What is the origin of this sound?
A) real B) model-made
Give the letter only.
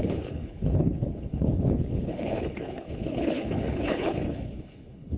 B